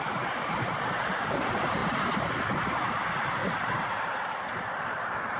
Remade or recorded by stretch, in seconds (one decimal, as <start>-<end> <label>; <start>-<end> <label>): 0.0-3.4 recorded; 3.4-4.3 remade; 4.3-5.4 recorded

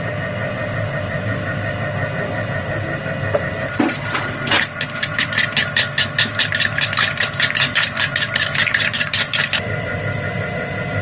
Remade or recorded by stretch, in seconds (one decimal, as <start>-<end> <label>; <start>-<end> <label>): 0.0-11.0 recorded